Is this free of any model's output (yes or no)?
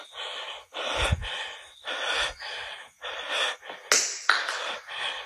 yes